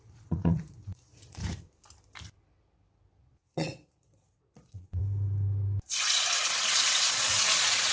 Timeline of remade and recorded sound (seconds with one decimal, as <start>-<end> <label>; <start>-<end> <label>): 0.0-1.4 remade; 1.4-3.2 recorded; 3.2-5.0 remade; 5.0-6.0 recorded; 6.0-7.9 remade